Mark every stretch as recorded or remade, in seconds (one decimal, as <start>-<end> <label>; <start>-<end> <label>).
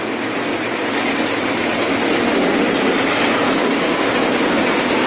0.0-3.6 recorded; 3.6-5.1 remade